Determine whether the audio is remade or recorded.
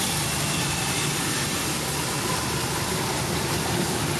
recorded